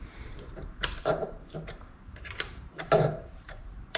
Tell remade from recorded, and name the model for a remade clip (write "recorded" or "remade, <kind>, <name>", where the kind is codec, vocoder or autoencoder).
remade, vocoder, BigVGAN v2